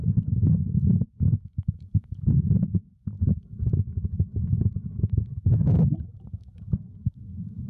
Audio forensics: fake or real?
fake